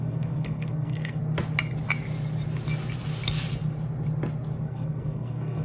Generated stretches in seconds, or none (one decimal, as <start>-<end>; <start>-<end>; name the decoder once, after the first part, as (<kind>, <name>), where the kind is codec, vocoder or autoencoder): 0.0-1.2 (codec, SNAC); 4.6-5.6